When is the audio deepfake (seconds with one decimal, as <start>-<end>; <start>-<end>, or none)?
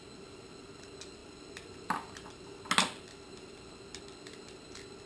none